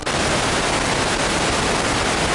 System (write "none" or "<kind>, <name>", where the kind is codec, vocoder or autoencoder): none